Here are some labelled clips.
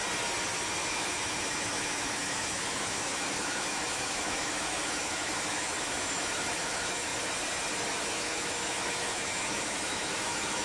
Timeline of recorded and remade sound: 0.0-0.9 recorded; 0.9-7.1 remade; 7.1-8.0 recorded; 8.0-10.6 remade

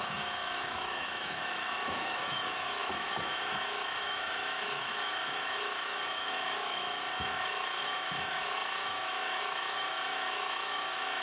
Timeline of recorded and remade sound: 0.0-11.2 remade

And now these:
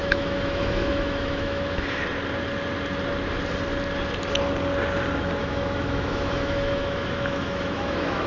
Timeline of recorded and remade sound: 0.0-2.0 remade; 2.0-5.4 recorded; 5.4-8.3 remade

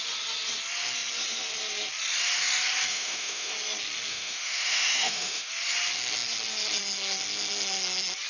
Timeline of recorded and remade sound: 0.0-2.9 recorded; 2.9-3.5 remade; 3.5-4.1 recorded; 4.1-5.5 remade; 5.5-8.3 recorded

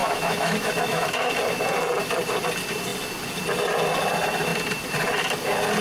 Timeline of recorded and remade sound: 0.0-1.3 remade; 1.3-5.8 recorded

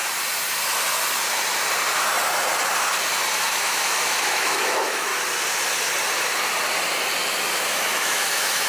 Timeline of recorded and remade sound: 0.0-3.5 recorded; 3.5-5.1 remade; 5.1-7.5 recorded; 7.5-8.7 remade

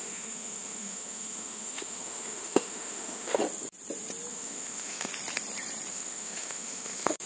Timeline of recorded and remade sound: 0.0-3.4 remade; 3.4-4.3 recorded; 4.3-5.1 remade; 5.1-5.9 recorded; 5.9-7.3 remade